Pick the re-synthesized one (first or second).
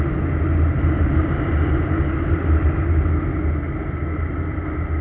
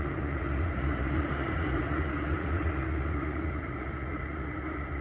second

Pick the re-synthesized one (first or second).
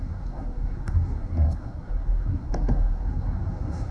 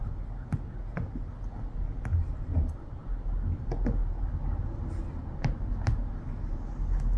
first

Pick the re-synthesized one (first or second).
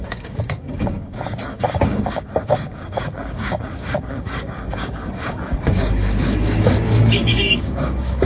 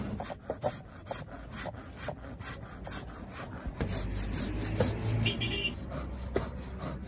first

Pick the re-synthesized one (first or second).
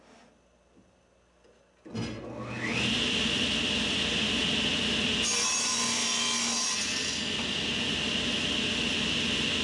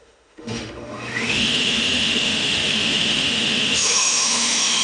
second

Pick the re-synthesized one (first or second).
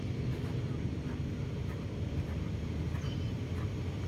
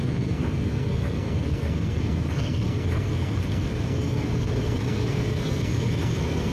second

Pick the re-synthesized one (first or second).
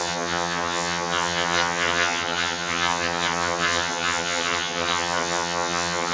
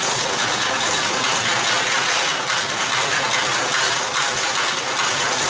first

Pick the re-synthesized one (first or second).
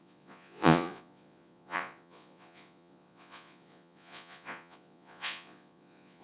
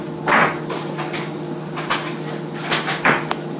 first